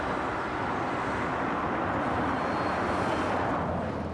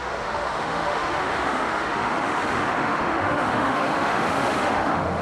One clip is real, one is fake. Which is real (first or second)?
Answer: first